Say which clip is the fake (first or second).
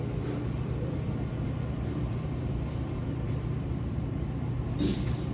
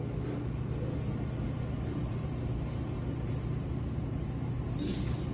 first